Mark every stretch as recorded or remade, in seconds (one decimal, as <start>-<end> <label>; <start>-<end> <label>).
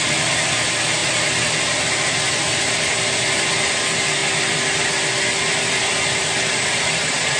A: 0.0-7.4 recorded